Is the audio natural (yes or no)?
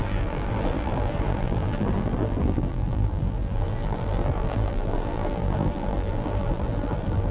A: no